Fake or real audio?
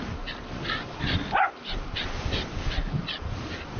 real